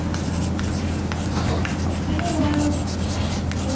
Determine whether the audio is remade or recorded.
recorded